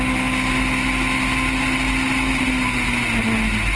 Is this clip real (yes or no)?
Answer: yes